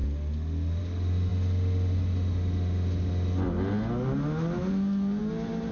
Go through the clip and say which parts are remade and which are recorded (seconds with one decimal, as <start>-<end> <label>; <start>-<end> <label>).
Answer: 0.0-5.7 recorded